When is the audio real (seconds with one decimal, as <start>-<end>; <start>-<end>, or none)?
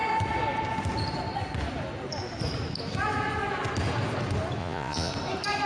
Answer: 0.0-4.6; 5.1-5.7